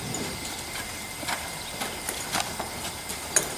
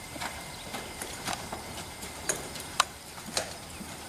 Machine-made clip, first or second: second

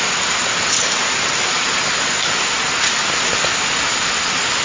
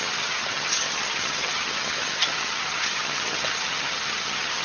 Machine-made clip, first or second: second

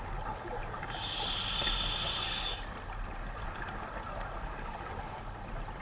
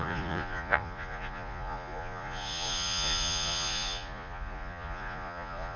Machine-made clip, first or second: second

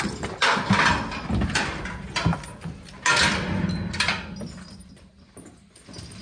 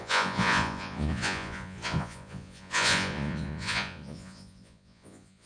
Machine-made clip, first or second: second